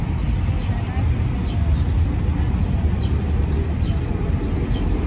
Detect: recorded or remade recorded